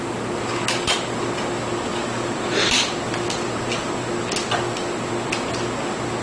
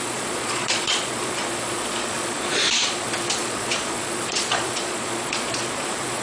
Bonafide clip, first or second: first